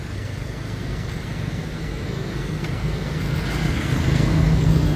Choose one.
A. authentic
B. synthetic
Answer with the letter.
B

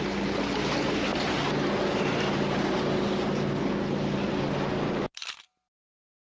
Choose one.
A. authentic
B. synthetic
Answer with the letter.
A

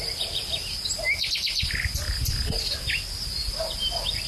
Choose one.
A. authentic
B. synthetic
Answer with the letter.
A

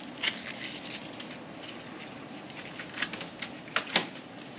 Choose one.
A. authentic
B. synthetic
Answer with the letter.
A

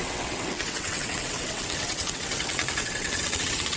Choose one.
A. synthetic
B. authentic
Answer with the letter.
A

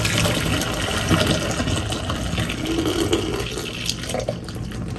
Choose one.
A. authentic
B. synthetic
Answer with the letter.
A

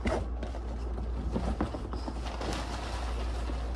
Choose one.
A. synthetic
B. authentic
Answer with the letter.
B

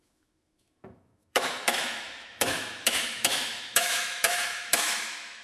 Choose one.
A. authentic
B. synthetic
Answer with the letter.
B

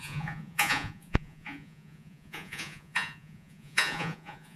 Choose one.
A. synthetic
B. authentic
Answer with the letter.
A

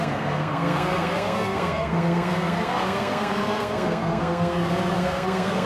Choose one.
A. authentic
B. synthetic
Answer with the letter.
B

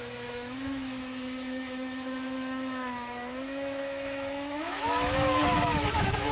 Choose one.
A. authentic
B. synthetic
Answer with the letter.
B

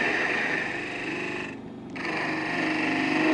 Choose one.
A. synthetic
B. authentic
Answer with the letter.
B